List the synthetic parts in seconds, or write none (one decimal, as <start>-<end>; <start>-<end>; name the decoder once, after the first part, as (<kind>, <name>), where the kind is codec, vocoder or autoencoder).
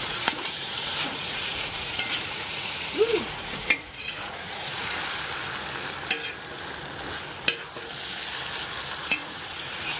0.0-5.0 (vocoder, Vocos); 9.0-10.0